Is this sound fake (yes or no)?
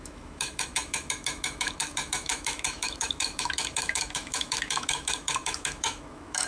yes